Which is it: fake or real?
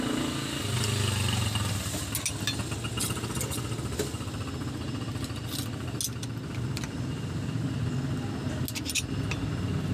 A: real